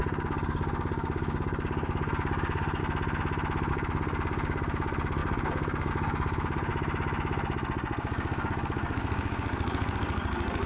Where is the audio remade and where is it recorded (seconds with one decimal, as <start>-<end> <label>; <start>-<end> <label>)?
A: 0.0-2.8 remade; 2.8-3.7 recorded; 3.7-6.7 remade; 6.7-8.0 recorded; 8.0-10.7 remade